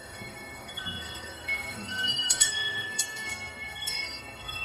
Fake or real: fake